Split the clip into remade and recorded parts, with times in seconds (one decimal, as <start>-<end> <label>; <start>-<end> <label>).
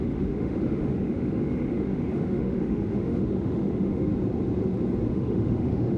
0.0-4.1 remade; 4.1-5.1 recorded; 5.1-6.0 remade